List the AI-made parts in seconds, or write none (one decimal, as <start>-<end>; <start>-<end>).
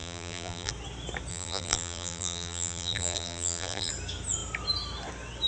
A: 0.0-0.7; 1.3-3.9